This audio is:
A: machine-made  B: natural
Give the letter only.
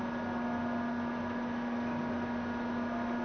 B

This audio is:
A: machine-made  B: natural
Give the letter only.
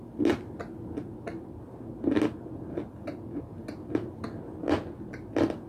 B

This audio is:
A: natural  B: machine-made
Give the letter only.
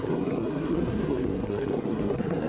B